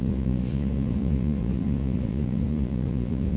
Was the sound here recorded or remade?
remade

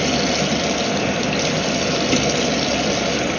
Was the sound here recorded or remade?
recorded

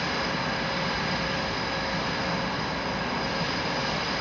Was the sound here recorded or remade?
recorded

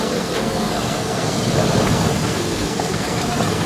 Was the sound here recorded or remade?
remade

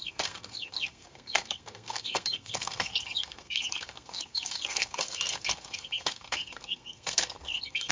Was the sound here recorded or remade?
remade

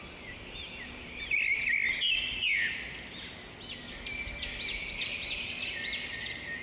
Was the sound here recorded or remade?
recorded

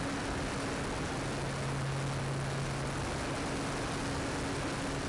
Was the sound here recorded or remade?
recorded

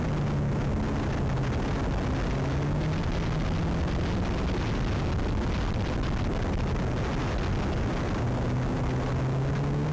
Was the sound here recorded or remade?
recorded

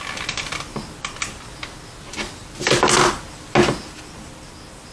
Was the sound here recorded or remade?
recorded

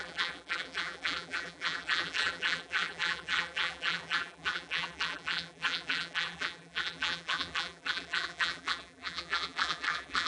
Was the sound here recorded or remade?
remade